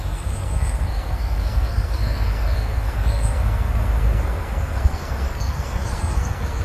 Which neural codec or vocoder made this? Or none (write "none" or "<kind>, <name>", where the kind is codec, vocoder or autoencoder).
codec, SNAC